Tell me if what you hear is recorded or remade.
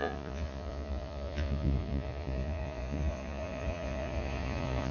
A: remade